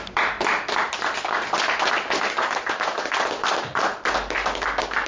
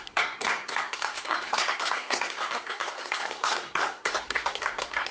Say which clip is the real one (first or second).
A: first